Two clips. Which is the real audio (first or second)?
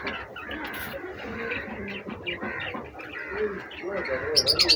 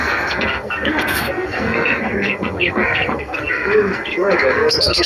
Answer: first